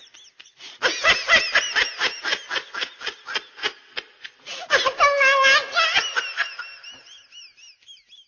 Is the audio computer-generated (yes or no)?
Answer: no